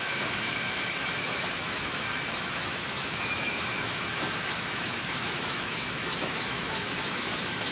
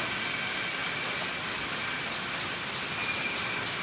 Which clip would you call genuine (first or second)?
second